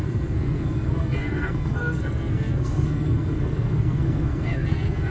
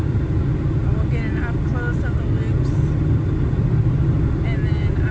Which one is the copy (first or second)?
first